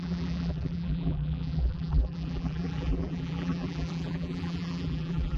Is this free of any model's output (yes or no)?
no